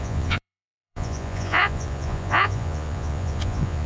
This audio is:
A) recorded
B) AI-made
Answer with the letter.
B